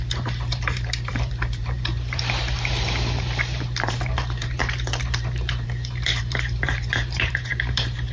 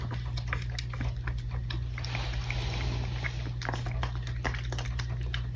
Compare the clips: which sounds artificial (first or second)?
first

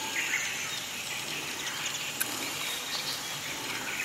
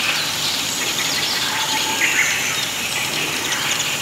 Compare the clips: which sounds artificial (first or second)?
second